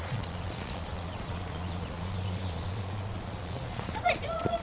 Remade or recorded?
remade